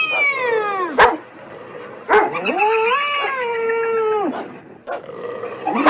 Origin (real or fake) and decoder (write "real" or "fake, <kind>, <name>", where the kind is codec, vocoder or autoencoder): real